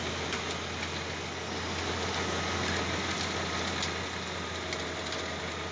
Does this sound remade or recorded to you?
recorded